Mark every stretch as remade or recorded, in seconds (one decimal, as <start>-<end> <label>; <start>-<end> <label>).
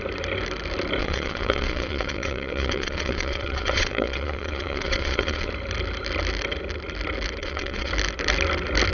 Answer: 0.0-1.0 recorded; 1.0-5.5 remade; 5.5-7.4 recorded; 7.4-7.9 remade; 7.9-8.9 recorded